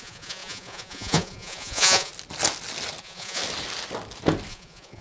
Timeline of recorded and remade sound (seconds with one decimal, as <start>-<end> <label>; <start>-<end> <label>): 0.0-2.1 remade; 2.1-3.0 recorded; 3.0-3.4 remade; 3.4-4.5 recorded; 4.5-5.0 remade